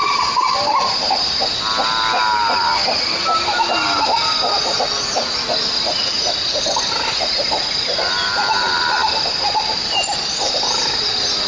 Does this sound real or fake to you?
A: real